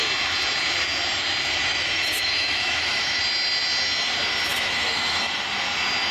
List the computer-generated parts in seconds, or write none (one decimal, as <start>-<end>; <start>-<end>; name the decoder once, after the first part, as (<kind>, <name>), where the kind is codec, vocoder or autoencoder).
1.6-3.2 (autoencoder, DAC-VAE); 4.5-5.4